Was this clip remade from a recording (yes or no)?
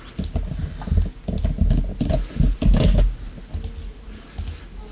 no